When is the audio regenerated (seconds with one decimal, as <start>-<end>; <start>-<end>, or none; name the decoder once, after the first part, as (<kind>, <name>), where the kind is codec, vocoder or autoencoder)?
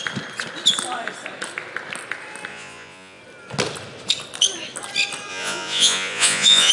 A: 2.5-3.2 (vocoder, Vocos); 5.3-6.7